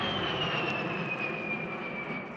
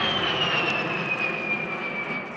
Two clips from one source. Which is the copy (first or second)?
first